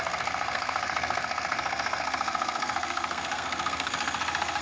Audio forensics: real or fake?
fake